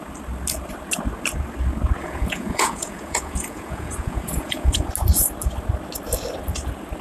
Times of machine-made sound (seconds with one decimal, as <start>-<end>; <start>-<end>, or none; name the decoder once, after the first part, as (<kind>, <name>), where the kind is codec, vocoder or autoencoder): 2.0-4.9 (vocoder, Vocos)